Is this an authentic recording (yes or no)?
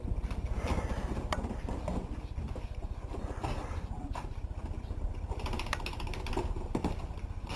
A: yes